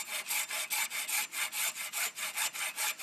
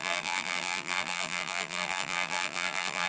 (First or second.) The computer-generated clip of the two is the second